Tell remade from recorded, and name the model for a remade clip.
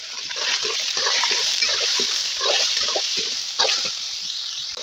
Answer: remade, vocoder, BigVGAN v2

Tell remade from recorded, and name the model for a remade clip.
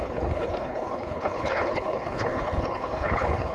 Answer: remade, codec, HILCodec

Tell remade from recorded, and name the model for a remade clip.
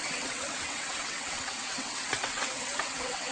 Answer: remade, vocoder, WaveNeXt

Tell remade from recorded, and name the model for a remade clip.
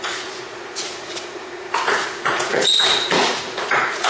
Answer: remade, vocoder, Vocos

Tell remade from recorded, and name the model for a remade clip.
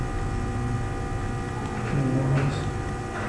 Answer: recorded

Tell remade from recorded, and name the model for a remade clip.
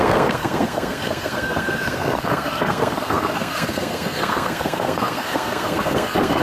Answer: remade, codec, SNAC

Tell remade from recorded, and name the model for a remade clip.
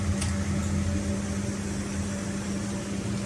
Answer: recorded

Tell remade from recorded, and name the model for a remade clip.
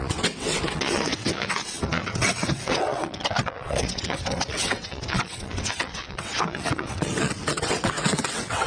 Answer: remade, vocoder, WaveNeXt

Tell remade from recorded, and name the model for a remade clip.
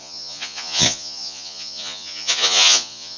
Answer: remade, vocoder, Vocos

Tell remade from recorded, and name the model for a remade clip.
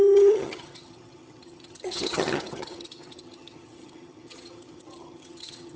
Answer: remade, vocoder, HiFi-GAN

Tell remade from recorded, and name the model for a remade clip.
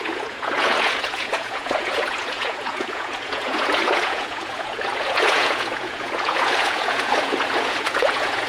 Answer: remade, vocoder, Vocos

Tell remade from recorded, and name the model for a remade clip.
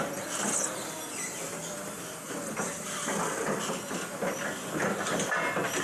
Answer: recorded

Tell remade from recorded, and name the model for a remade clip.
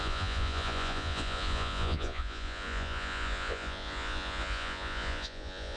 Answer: remade, vocoder, Vocos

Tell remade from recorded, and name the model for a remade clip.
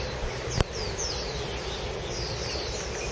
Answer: recorded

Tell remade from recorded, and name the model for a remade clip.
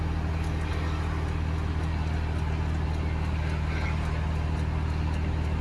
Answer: recorded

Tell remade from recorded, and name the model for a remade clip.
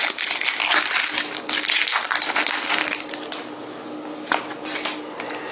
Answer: recorded